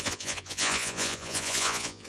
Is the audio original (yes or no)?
no